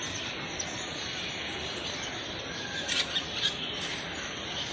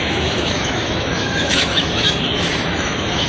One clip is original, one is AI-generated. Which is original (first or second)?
first